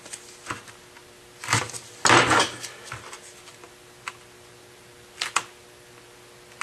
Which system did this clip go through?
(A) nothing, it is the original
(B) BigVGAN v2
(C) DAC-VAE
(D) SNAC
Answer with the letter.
A